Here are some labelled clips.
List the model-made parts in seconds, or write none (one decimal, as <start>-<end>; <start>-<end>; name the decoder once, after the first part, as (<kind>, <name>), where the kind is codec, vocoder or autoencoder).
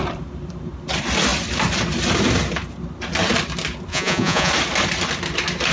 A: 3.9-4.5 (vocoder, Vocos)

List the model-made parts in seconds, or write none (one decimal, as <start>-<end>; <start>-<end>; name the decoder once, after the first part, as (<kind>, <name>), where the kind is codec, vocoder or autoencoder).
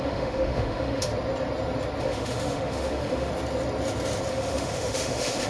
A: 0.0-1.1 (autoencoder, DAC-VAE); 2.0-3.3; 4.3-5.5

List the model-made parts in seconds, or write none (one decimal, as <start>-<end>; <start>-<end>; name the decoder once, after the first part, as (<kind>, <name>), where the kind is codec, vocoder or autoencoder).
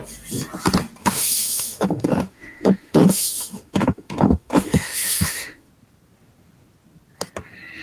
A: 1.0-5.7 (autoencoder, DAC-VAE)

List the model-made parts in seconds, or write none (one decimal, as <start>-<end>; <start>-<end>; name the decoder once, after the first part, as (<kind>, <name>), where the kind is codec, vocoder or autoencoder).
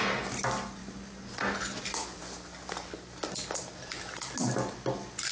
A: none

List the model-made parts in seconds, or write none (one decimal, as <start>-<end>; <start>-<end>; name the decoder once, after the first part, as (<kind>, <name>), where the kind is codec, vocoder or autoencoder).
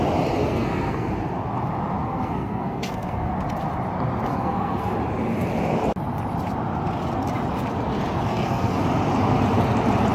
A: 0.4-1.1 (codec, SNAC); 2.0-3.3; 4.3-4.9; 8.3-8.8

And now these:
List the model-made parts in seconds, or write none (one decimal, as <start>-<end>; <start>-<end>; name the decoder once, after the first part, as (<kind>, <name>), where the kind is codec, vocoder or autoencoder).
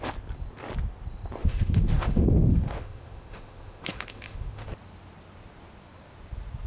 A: 1.4-4.7 (autoencoder, DAC-VAE)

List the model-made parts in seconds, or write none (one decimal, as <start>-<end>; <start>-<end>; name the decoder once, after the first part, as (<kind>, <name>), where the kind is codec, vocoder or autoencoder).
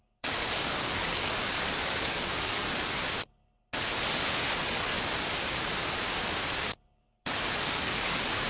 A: 0.0-2.6 (codec, DAC); 7.0-8.5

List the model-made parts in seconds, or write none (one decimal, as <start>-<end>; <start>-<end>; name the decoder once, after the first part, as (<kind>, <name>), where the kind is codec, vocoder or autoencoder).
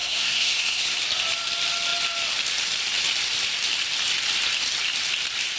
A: 0.0-1.0 (codec, SNAC)